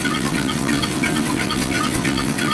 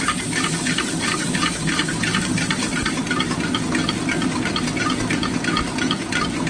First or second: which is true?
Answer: second